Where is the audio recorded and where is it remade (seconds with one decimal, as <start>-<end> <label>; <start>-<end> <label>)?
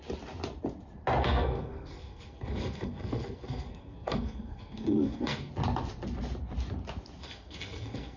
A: 0.0-1.2 recorded; 1.2-5.5 remade; 5.5-7.2 recorded; 7.2-8.2 remade